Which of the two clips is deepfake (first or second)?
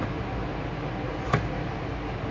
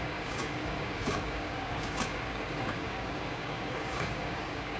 second